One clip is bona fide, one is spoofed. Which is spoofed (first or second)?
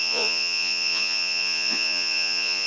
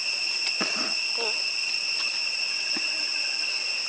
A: first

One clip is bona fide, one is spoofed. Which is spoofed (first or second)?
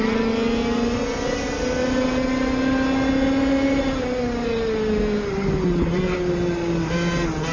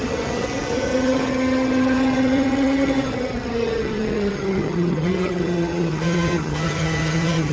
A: second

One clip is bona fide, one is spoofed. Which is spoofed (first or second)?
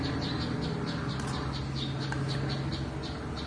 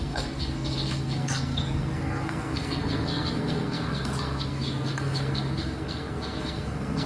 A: second